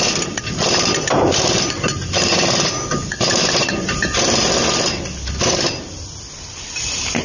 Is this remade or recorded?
recorded